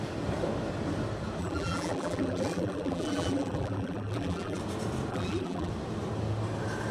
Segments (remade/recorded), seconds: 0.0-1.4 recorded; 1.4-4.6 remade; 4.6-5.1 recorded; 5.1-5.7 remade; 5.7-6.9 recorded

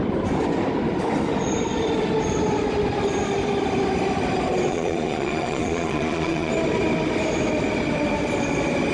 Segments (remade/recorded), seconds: 0.0-4.7 recorded; 4.7-6.5 remade; 6.5-8.9 recorded

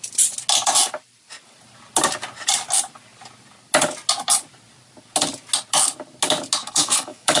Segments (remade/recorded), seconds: 0.0-6.6 recorded; 6.6-7.4 remade

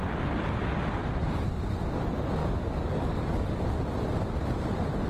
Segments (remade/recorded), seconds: 0.0-2.4 recorded; 2.4-3.7 remade; 3.7-5.1 recorded

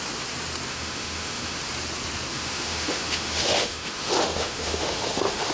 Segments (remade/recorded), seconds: 0.0-0.7 recorded; 0.7-1.6 remade; 1.6-2.3 recorded; 2.3-5.5 remade

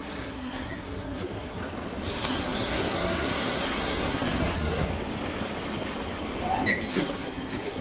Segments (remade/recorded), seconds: 0.0-1.6 remade; 1.6-2.1 recorded; 2.1-4.9 remade; 4.9-6.9 recorded; 6.9-7.8 remade

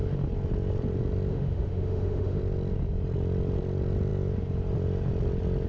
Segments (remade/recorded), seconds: 0.0-1.3 recorded; 1.3-2.4 remade; 2.4-5.7 recorded

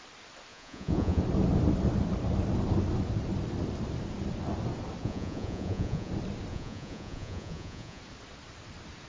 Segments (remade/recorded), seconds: 0.0-0.5 recorded; 0.5-1.2 remade; 1.2-5.0 recorded; 5.0-6.1 remade; 6.1-6.5 recorded; 6.5-8.0 remade; 8.0-9.1 recorded